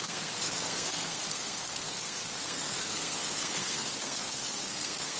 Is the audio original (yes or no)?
no